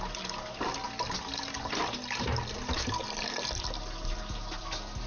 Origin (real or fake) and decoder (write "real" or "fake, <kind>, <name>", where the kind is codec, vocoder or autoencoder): real